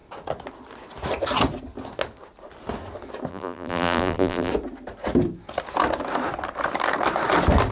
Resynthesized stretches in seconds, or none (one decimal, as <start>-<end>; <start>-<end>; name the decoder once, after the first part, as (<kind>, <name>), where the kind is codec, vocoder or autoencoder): 3.3-4.5 (vocoder, BigVGAN v2)